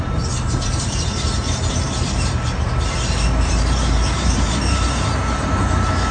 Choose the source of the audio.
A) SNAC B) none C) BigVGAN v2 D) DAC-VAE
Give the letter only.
C